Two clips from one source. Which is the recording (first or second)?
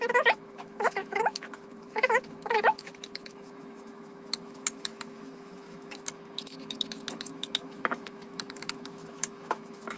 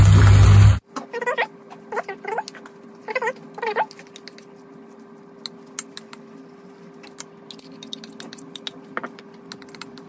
second